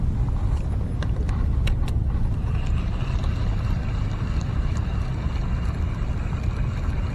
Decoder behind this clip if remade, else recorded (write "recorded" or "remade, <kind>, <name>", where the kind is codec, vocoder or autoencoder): recorded